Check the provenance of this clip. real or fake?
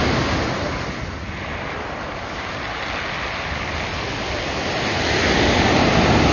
real